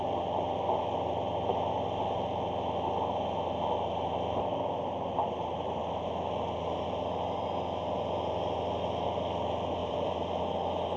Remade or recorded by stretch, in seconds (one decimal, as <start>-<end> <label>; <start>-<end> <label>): 0.0-9.8 recorded; 9.8-10.4 remade; 10.4-11.0 recorded